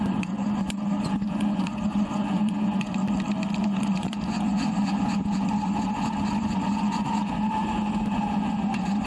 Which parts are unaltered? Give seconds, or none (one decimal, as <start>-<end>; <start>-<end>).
3.0-3.6